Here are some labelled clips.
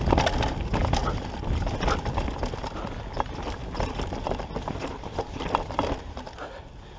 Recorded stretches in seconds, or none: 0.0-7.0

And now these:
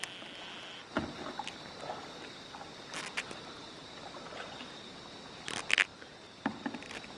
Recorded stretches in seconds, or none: 0.0-7.2

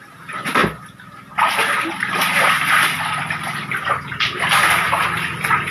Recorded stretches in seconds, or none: 0.0-5.7

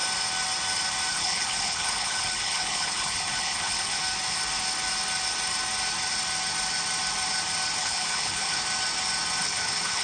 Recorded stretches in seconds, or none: 0.0-1.1; 4.0-7.8; 8.6-9.4

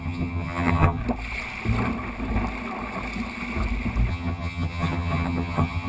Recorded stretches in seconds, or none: 1.0-4.1

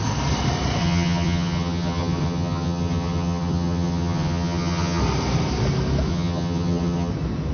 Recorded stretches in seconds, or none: 0.0-0.8; 5.0-6.1; 7.1-7.5

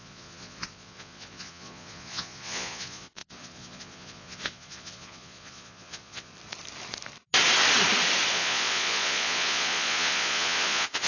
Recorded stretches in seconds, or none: 6.3-8.3